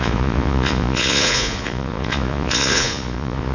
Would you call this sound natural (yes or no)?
no